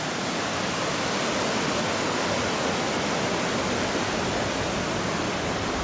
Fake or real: real